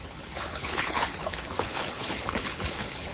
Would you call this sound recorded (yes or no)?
no